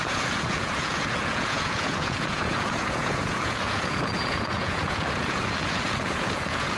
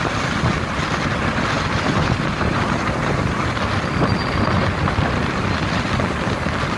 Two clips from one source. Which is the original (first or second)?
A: second